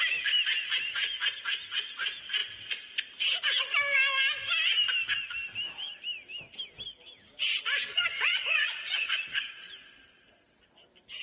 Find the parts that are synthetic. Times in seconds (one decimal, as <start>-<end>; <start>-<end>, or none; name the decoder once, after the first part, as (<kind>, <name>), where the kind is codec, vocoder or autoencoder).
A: 8.1-9.5 (vocoder, WaveNeXt)